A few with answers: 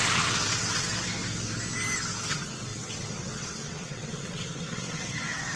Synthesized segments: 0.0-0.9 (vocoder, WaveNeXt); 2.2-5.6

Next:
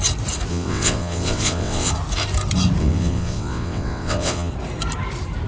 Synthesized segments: 0.5-1.9 (vocoder, WaveNeXt); 2.8-4.5

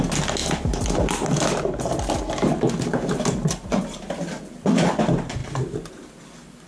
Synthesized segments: none

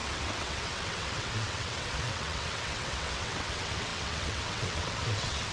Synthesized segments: 0.0-5.5 (vocoder, WaveNeXt)

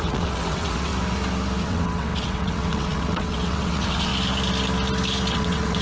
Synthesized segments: 0.0-0.9 (vocoder, WaveNeXt); 1.6-4.1; 5.3-5.8

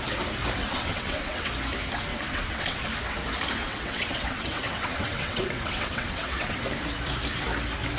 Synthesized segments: 0.6-1.5 (vocoder, WaveNeXt); 2.1-2.8; 3.6-6.6

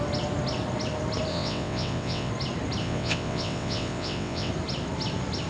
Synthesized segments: 1.3-2.3 (vocoder, WaveNeXt); 2.8-4.5